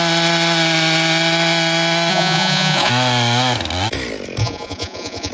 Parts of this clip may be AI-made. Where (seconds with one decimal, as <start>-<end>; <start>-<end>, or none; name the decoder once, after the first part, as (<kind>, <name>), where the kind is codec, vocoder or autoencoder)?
2.1-2.9 (vocoder, Vocos); 4.4-5.3